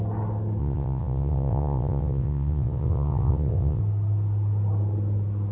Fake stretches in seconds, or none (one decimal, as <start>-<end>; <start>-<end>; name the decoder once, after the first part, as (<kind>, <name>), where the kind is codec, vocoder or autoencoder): 0.6-3.8 (vocoder, WaveNeXt)